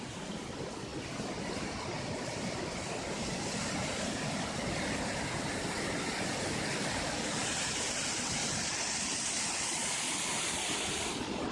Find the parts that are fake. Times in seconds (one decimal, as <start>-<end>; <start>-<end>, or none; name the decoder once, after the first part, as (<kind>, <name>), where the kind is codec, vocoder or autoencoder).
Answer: none

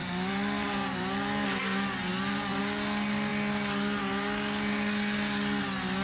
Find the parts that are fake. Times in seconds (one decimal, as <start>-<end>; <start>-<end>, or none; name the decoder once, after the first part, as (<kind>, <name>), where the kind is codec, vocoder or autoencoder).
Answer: 0.0-1.0 (vocoder, BigVGAN v2); 2.1-2.6

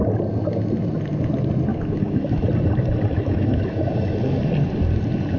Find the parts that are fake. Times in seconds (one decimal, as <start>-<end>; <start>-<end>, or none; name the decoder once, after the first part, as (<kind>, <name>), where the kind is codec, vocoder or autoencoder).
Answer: 1.7-2.5 (autoencoder, DAC-VAE); 3.1-3.9

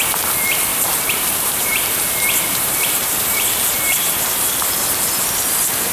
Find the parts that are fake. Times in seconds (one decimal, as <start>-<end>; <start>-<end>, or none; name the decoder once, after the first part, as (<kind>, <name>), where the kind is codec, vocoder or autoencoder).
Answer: 0.7-4.2 (vocoder, BigVGAN v2)